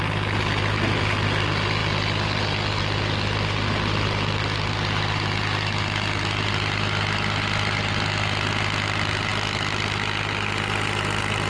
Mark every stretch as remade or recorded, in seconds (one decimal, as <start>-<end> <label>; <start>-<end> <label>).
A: 0.0-11.5 recorded